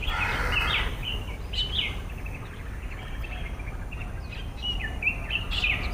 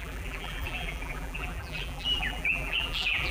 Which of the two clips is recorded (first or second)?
first